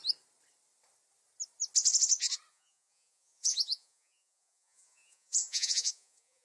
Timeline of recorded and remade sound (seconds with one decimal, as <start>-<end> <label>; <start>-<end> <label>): 0.0-2.5 recorded; 2.5-6.4 remade